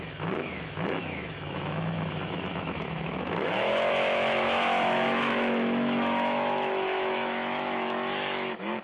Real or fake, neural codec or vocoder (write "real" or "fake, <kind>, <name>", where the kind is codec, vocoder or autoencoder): fake, autoencoder, DAC-VAE